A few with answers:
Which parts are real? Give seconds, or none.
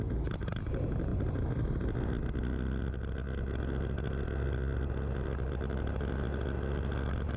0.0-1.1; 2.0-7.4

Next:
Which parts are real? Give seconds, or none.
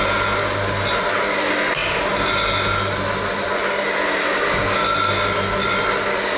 0.0-6.4